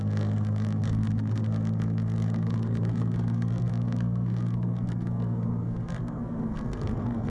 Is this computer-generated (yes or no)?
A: yes